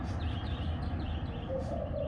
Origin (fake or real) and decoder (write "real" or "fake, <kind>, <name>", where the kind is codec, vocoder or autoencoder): real